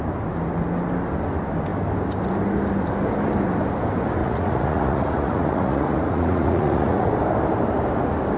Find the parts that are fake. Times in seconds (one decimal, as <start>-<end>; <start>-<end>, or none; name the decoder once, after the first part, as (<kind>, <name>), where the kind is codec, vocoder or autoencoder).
4.2-7.1 (vocoder, Vocos)